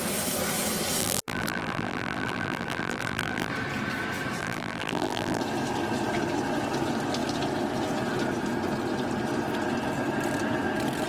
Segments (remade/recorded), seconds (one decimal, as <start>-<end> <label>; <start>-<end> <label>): 0.0-1.0 recorded; 1.0-3.5 remade; 3.5-4.4 recorded; 4.4-5.4 remade; 5.4-11.1 recorded

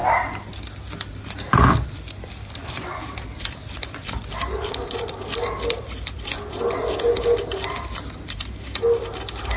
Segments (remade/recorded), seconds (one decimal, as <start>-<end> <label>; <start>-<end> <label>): 0.0-2.6 recorded; 2.6-6.8 remade; 6.8-9.6 recorded

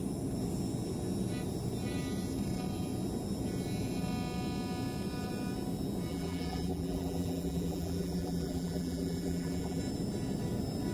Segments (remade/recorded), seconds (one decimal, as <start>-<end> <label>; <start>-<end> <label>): 0.0-6.1 recorded; 6.1-9.8 remade; 9.8-10.9 recorded

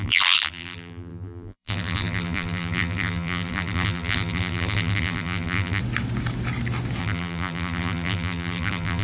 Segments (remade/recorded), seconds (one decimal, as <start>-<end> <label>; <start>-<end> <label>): 0.0-5.8 remade; 5.8-7.0 recorded; 7.0-9.0 remade

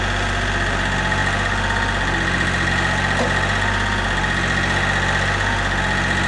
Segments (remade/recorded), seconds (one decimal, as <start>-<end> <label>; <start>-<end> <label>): 0.0-6.3 recorded

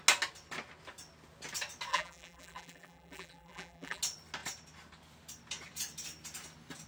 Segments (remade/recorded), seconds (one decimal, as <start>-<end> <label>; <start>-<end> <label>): 0.0-1.9 recorded; 1.9-4.0 remade; 4.0-6.9 recorded

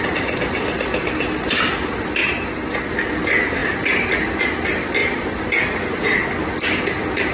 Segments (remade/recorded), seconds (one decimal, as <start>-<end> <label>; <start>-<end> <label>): 0.0-2.2 recorded; 2.2-2.9 remade; 2.9-5.0 recorded; 5.0-5.6 remade; 5.6-7.3 recorded